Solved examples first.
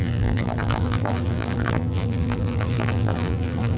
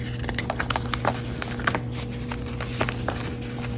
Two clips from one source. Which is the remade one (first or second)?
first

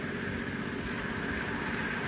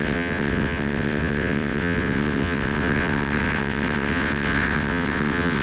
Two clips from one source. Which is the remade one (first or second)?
second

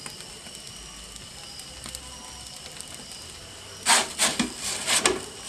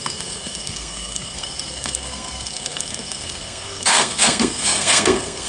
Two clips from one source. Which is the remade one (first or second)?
second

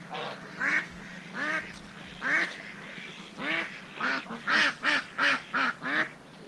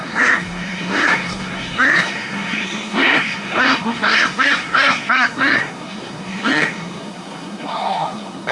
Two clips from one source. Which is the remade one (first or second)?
second